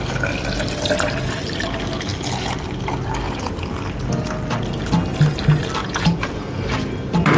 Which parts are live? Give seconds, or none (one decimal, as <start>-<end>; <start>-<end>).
0.0-5.8; 6.3-7.4